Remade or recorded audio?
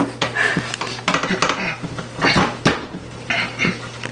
recorded